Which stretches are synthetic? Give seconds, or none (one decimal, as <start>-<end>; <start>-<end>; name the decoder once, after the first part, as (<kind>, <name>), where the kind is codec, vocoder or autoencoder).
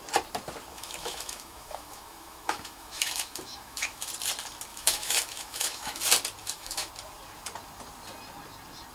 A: 0.7-4.1 (autoencoder, DAC-VAE); 4.7-6.0; 6.4-6.9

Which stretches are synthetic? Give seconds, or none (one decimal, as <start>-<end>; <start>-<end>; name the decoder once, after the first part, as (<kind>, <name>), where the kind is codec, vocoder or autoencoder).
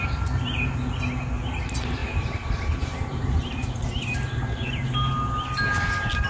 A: 2.0-5.3 (vocoder, BigVGAN v2)